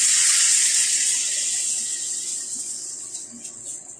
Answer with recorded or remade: remade